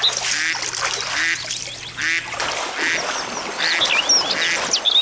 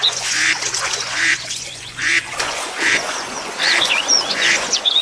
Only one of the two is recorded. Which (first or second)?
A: first